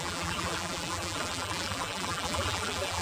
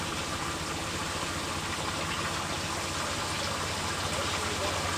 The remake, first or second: first